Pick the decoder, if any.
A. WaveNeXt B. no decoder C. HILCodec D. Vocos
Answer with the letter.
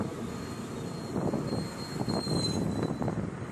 B